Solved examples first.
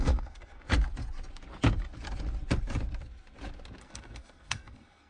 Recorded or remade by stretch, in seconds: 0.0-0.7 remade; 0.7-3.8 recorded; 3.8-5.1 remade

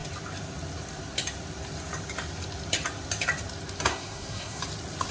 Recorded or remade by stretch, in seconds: 0.0-3.9 recorded; 3.9-4.6 remade; 4.6-5.1 recorded

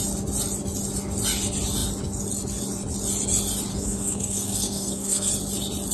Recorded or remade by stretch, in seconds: 0.0-3.7 recorded; 3.7-5.3 remade; 5.3-5.9 recorded

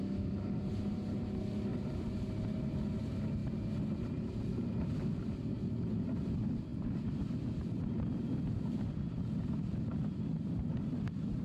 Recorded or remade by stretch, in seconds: 0.0-11.4 recorded

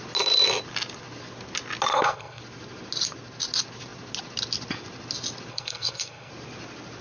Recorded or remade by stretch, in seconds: 0.0-1.9 recorded; 1.9-2.4 remade; 2.4-5.5 recorded; 5.5-6.3 remade; 6.3-7.0 recorded

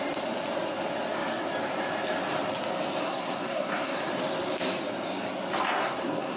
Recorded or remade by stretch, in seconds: 0.0-3.0 recorded; 3.0-4.1 remade; 4.1-5.7 recorded; 5.7-6.4 remade